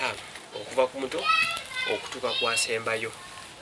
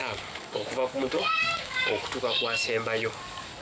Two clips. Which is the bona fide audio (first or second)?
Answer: first